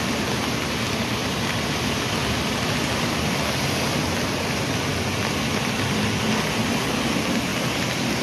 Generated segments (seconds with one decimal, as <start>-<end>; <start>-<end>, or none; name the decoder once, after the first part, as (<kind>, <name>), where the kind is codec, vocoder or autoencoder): none